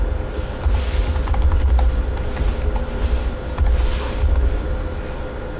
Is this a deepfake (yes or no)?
no